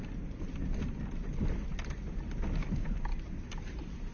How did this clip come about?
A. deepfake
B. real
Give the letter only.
B